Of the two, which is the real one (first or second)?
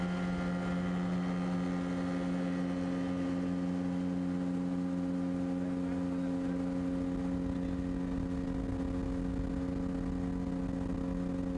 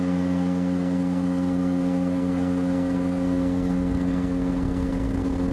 first